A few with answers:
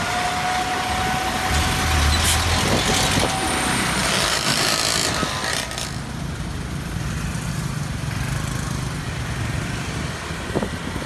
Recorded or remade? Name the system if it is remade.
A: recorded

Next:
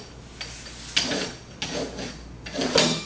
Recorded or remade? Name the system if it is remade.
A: recorded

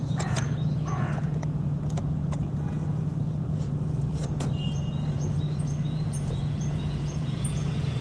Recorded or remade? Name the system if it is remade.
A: remade, vocoder, Vocos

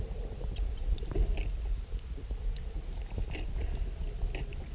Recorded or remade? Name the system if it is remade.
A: recorded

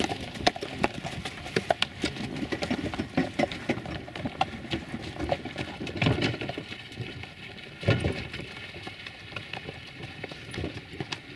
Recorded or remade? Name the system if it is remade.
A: recorded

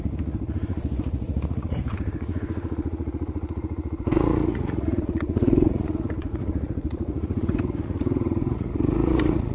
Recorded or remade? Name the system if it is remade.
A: remade, vocoder, Vocos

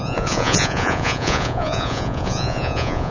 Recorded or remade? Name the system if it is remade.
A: remade, vocoder, Vocos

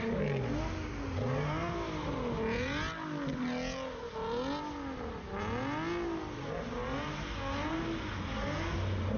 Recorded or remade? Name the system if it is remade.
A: recorded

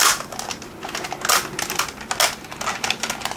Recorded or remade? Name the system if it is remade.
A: recorded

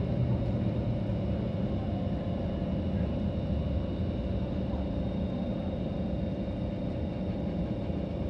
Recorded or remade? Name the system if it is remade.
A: recorded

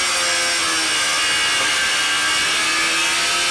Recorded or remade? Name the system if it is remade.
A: recorded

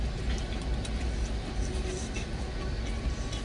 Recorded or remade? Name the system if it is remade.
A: recorded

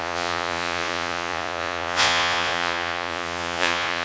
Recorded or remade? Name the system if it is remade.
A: remade, vocoder, Vocos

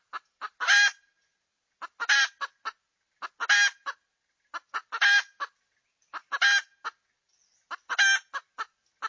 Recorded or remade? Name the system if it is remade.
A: recorded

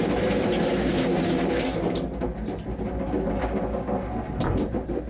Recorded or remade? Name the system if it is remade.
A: recorded